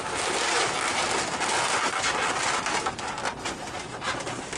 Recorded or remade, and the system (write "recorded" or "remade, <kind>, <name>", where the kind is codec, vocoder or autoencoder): recorded